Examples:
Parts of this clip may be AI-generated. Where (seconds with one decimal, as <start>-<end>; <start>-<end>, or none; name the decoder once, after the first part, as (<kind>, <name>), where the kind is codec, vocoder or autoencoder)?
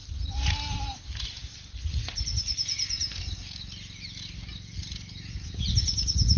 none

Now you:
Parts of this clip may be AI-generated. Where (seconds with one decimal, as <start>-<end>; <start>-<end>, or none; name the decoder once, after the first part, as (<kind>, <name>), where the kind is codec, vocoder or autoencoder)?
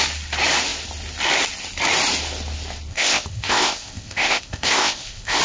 2.9-5.4 (codec, ZipCodec)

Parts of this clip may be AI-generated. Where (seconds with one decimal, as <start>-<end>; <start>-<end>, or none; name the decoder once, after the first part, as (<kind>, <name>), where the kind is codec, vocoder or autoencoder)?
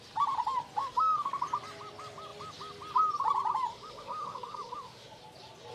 0.8-1.4 (autoencoder, DAC-VAE); 3.7-5.2